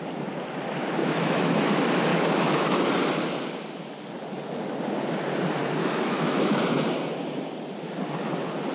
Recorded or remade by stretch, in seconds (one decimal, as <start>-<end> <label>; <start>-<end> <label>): 0.0-1.0 recorded; 1.0-1.7 remade; 1.7-2.1 recorded; 2.1-2.9 remade; 2.9-5.8 recorded; 5.8-6.7 remade; 6.7-8.7 recorded